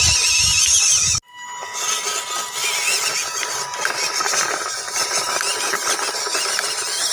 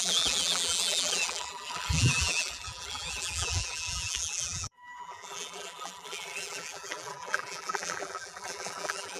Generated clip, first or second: second